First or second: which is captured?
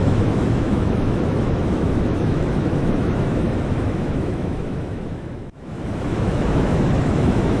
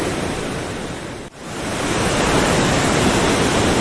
second